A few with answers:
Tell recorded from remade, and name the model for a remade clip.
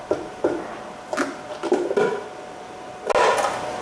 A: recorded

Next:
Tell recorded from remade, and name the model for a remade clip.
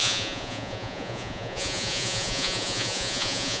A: remade, vocoder, Vocos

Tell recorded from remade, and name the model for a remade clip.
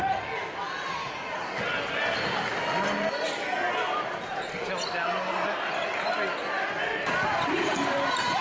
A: recorded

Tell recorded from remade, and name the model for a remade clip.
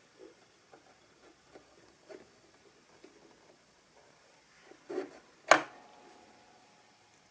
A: recorded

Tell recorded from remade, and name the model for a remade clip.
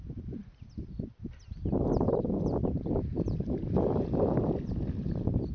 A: recorded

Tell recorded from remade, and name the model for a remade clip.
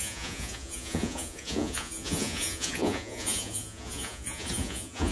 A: remade, vocoder, Vocos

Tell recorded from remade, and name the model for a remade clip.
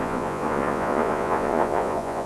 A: remade, vocoder, Vocos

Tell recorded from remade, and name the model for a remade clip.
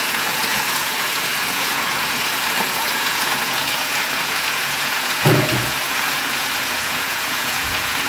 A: remade, vocoder, Vocos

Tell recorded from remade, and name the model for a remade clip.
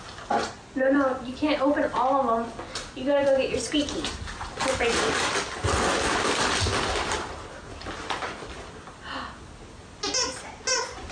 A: recorded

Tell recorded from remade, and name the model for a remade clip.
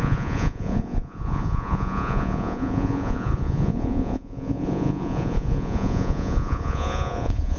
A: remade, vocoder, Vocos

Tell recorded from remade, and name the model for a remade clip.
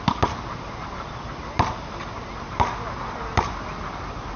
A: recorded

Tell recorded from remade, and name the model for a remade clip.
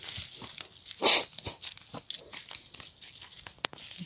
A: recorded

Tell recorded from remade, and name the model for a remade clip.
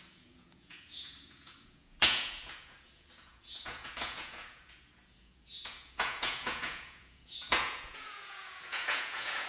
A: remade, vocoder, Vocos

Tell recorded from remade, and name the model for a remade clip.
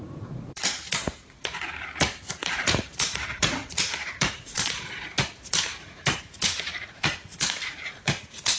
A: remade, vocoder, Vocos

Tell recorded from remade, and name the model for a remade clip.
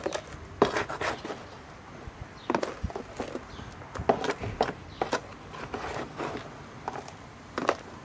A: recorded